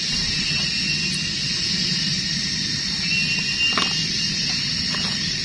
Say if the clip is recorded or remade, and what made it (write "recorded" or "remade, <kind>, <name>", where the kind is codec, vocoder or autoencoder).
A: recorded